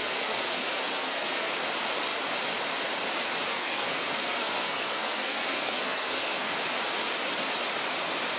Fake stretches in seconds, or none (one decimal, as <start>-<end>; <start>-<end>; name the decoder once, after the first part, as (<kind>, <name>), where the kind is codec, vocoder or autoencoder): 0.0-1.5 (codec, SNAC); 3.5-6.5